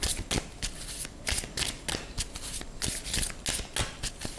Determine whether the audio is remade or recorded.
recorded